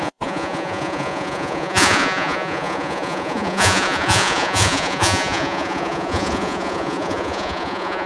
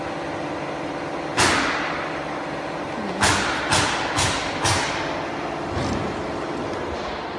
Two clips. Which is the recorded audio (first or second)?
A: second